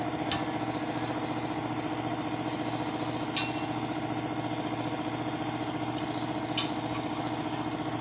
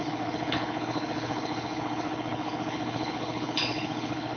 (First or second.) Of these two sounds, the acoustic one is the first